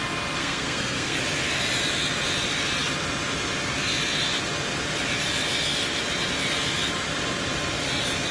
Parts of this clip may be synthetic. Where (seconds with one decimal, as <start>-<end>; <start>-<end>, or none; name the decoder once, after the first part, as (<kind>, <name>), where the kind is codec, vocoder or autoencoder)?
0.4-1.2 (codec, SNAC)